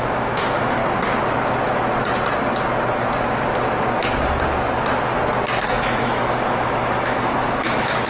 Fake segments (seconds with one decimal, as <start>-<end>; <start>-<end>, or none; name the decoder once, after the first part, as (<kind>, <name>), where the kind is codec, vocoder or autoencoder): 0.0-0.8 (autoencoder, DAC-VAE); 5.7-8.1